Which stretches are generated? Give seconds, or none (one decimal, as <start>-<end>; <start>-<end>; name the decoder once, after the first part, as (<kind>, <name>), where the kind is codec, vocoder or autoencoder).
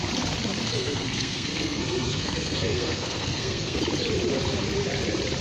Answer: 0.6-3.8 (codec, SNAC)